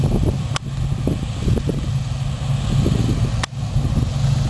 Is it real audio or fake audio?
real